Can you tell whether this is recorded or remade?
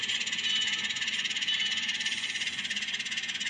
remade